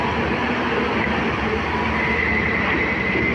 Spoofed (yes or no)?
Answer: no